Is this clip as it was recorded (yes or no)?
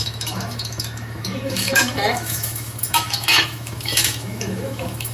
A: no